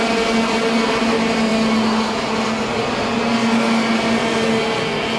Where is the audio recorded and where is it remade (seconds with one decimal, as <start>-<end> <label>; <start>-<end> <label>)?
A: 0.0-5.2 recorded